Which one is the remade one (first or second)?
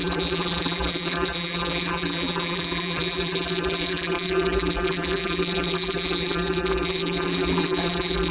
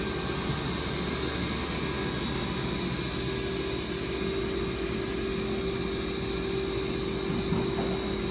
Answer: first